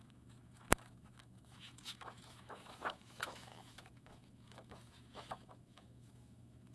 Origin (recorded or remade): remade